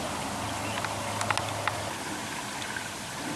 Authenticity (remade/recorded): recorded